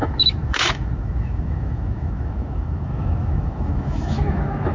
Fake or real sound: fake